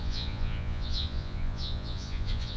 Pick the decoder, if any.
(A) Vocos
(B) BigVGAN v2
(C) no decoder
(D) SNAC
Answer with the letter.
A